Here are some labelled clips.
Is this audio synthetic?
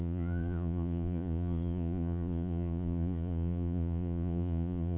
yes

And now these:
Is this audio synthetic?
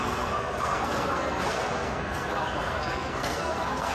yes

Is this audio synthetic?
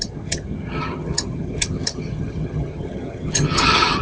yes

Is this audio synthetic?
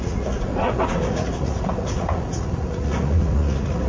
yes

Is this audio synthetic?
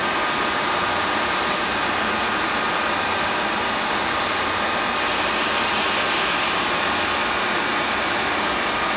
no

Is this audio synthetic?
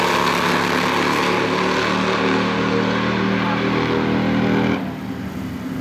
no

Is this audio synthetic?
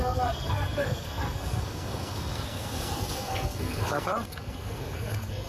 yes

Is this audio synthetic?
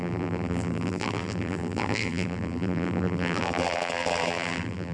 yes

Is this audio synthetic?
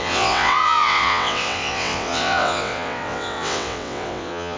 yes